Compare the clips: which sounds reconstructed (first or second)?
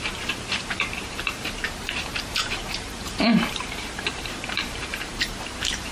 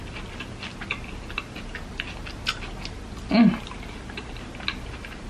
first